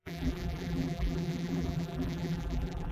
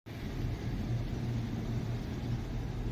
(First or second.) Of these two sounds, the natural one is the second